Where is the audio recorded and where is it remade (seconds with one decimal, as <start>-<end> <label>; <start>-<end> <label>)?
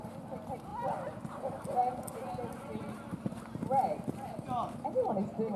0.0-5.6 recorded